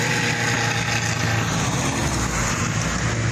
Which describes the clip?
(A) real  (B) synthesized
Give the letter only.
A